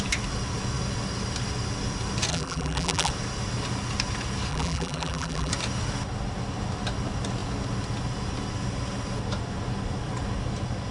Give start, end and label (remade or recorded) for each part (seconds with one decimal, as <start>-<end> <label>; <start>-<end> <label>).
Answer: 0.0-2.3 recorded; 2.3-3.1 remade; 3.1-4.5 recorded; 4.5-5.5 remade; 5.5-10.9 recorded